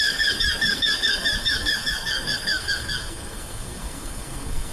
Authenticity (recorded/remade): remade